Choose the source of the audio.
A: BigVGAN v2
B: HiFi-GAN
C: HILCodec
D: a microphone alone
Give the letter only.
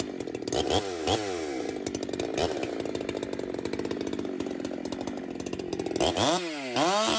D